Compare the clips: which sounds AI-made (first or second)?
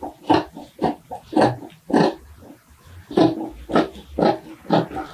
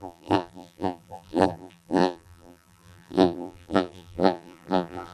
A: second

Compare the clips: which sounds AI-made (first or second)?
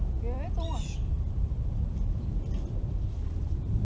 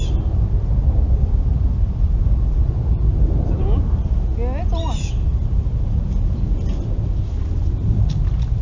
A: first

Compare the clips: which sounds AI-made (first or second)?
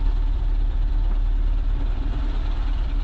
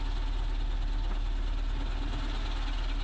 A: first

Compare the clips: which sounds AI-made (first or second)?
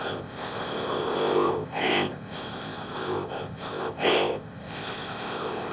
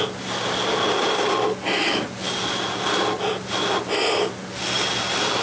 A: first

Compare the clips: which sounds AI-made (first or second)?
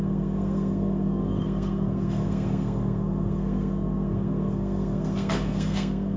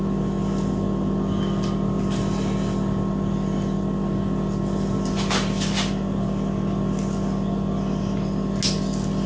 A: first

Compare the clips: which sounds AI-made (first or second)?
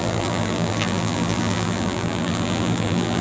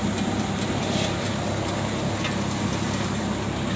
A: first